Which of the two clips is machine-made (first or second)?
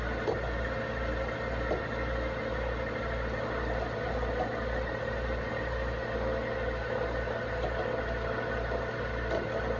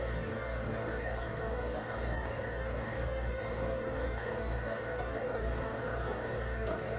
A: second